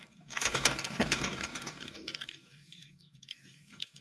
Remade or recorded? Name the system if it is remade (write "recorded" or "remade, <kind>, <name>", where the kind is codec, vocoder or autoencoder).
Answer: remade, codec, DAC